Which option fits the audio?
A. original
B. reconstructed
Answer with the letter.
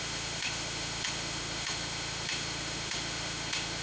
B